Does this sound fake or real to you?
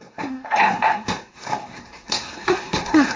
fake